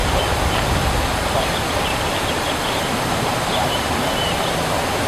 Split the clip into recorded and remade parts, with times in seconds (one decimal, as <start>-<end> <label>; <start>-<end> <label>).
0.0-3.5 recorded; 3.5-4.5 remade; 4.5-5.1 recorded